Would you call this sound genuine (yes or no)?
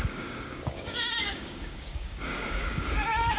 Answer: no